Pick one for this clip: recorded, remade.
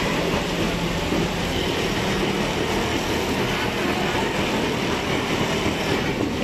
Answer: recorded